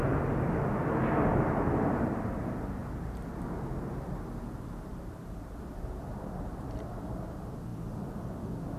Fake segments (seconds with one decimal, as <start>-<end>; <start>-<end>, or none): 1.3-2.2; 4.9-6.9